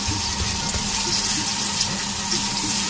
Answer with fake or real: real